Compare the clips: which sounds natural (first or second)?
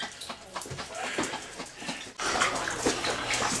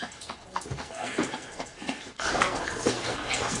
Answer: first